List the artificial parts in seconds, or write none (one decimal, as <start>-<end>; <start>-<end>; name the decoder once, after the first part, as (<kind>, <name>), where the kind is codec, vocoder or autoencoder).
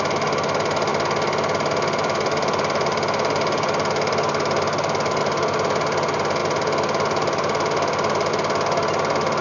none